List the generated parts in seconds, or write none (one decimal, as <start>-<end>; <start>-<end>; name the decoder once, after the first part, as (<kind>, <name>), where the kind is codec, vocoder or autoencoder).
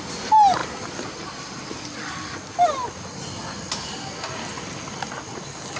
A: none